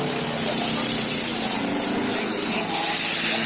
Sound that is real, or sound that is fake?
real